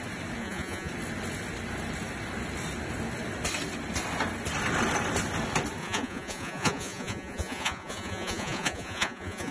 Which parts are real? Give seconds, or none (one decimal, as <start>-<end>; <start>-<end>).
0.0-0.4; 0.9-5.8